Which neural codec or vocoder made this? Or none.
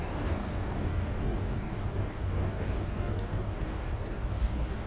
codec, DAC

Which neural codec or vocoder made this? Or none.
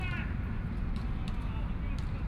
none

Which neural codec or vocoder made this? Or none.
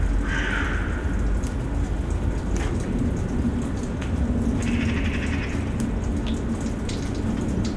none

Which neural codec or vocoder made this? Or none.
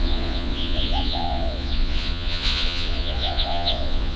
vocoder, Vocos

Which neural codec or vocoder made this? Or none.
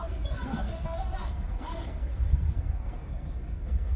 codec, SNAC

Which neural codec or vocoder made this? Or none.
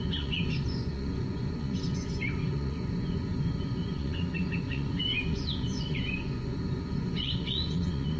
vocoder, Vocos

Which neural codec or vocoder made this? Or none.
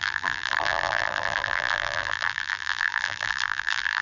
vocoder, BigVGAN v2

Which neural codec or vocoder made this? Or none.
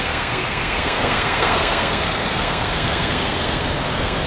codec, SNAC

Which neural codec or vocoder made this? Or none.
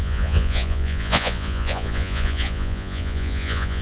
vocoder, Vocos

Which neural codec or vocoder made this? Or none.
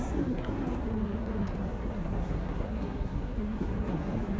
codec, SNAC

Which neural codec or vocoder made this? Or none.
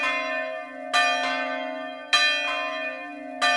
none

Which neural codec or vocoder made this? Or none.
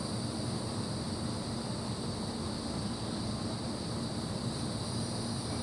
none